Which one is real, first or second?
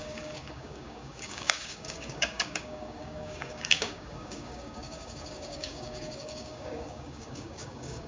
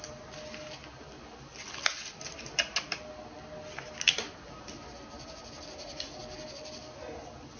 second